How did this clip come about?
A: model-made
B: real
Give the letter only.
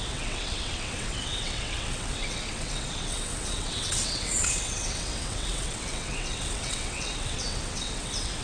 A